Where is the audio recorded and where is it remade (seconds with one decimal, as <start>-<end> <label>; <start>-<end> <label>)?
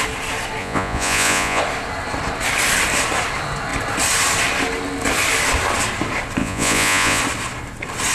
0.0-0.6 recorded; 0.6-1.6 remade; 1.6-6.4 recorded; 6.4-7.2 remade; 7.2-8.1 recorded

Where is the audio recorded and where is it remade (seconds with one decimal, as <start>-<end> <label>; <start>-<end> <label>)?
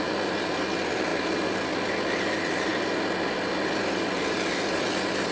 0.0-5.3 recorded